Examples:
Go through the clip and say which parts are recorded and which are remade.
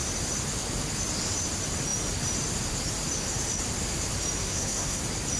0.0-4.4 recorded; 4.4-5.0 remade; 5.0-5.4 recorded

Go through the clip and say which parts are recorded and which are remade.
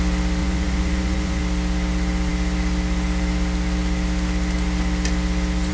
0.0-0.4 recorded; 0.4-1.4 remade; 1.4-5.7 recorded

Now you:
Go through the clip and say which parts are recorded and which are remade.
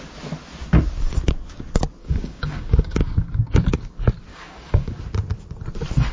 0.0-2.0 recorded; 2.0-3.9 remade; 3.9-4.3 recorded; 4.3-5.0 remade; 5.0-6.1 recorded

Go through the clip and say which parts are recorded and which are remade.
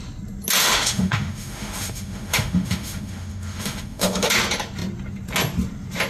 0.0-0.6 recorded; 0.6-4.3 remade; 4.3-6.1 recorded